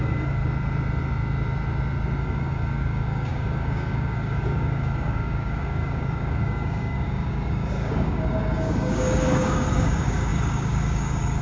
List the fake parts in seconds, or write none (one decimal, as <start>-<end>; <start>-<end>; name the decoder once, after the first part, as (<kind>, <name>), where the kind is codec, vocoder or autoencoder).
0.0-0.4 (codec, DAC); 2.2-11.4